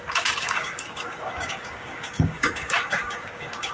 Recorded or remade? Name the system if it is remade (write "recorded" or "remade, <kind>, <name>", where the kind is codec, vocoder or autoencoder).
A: remade, codec, DAC